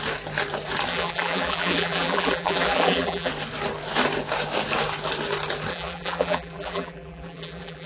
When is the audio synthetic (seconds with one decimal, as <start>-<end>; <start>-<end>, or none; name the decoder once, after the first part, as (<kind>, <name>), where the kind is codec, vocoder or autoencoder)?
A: 0.9-3.3 (vocoder, BigVGAN v2); 5.7-7.9